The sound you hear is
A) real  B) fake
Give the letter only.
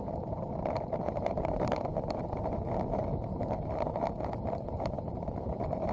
B